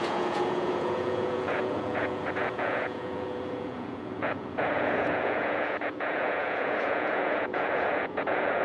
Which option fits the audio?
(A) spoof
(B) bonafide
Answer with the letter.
A